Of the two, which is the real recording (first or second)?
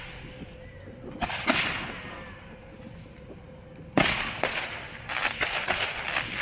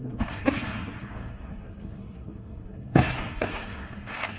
first